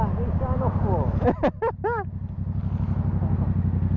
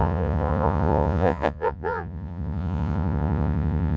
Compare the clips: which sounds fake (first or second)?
second